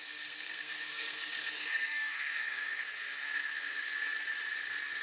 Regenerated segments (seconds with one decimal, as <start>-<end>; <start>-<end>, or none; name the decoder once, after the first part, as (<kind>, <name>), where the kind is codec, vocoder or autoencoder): 0.0-3.9 (codec, SNAC)